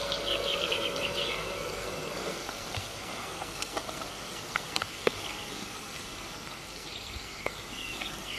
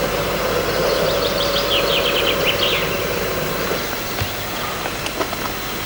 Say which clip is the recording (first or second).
second